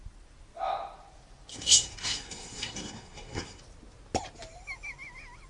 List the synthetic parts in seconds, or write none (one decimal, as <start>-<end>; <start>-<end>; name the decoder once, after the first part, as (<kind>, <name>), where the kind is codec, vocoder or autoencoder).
1.5-3.6 (codec, SNAC)